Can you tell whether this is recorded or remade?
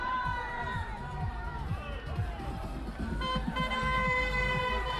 remade